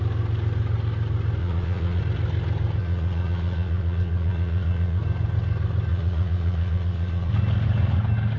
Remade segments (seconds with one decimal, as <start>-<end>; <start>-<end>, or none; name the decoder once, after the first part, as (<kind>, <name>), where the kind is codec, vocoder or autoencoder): 1.4-2.0 (vocoder, Vocos); 2.8-5.0; 5.9-7.3